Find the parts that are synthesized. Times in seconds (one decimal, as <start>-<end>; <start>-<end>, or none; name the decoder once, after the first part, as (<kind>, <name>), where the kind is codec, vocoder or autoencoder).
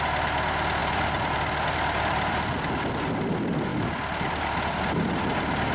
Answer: 0.8-2.9 (vocoder, BigVGAN v2)